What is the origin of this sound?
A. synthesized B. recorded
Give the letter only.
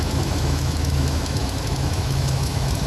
A